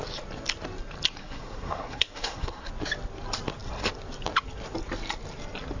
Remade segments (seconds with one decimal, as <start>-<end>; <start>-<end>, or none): 1.2-2.7